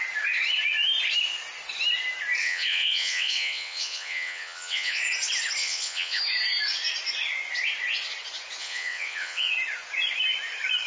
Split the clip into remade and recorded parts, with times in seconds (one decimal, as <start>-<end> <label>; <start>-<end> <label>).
0.0-2.4 recorded; 2.4-5.0 remade; 5.0-5.6 recorded; 5.6-6.2 remade; 6.2-8.6 recorded; 8.6-9.5 remade; 9.5-10.9 recorded